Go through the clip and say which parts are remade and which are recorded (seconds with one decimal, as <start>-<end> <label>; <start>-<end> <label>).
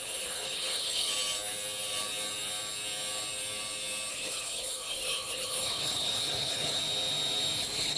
0.0-1.1 remade; 1.1-4.1 recorded; 4.1-6.8 remade; 6.8-7.6 recorded; 7.6-8.0 remade